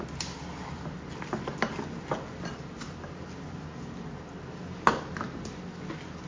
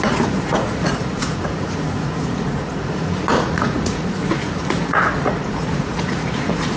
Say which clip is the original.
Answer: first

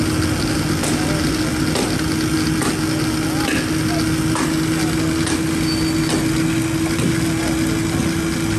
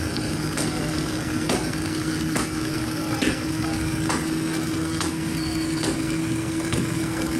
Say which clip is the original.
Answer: first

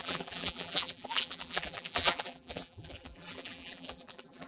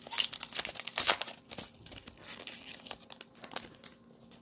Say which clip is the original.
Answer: second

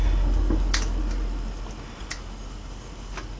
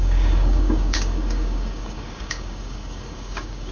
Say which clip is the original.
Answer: first